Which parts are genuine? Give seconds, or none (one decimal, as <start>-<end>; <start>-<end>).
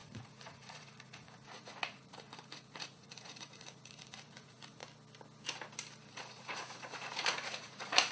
4.8-6.1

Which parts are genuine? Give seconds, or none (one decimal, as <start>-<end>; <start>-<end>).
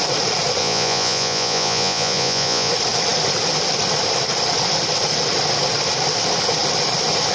0.0-0.6; 2.7-7.3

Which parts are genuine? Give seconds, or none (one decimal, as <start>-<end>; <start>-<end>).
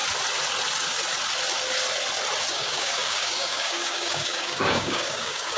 0.0-2.5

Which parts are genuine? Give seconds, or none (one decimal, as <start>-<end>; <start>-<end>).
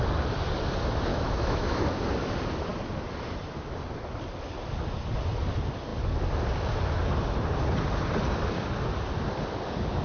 0.0-1.1; 2.0-10.0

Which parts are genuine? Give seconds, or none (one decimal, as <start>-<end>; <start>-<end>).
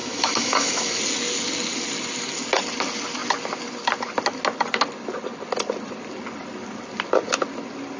1.0-8.0